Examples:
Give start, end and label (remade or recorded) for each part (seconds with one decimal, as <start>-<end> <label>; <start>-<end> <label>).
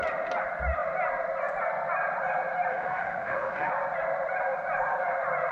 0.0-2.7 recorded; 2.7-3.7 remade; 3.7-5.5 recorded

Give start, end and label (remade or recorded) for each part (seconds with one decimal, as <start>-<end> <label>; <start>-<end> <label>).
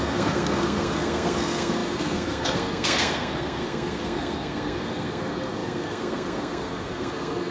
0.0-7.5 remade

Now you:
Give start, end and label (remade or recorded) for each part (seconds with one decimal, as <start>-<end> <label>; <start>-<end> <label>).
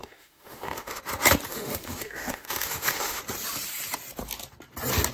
0.0-1.0 remade; 1.0-1.5 recorded; 1.5-3.2 remade; 3.2-5.1 recorded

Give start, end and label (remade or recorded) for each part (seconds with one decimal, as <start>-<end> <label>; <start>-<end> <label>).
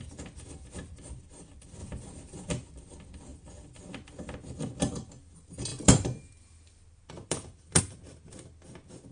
0.0-3.3 recorded; 3.3-4.8 remade; 4.8-5.7 recorded; 5.7-7.8 remade; 7.8-9.1 recorded